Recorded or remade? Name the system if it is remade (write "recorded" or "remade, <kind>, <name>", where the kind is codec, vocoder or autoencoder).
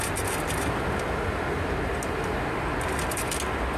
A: recorded